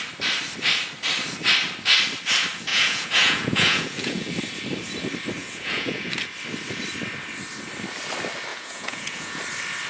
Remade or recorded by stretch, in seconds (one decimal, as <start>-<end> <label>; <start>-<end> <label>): 0.0-2.7 recorded; 2.7-4.3 remade; 4.3-5.4 recorded; 5.4-6.1 remade; 6.1-8.5 recorded; 8.5-9.4 remade; 9.4-9.9 recorded